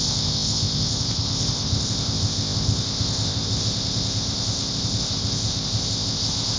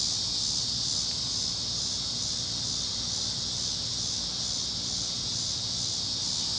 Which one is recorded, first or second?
second